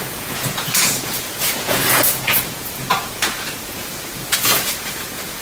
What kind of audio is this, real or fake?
fake